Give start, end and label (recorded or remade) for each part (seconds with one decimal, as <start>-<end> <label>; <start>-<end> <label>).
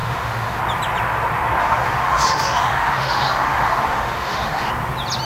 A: 0.0-0.6 remade; 0.6-1.6 recorded; 1.6-4.7 remade; 4.7-5.2 recorded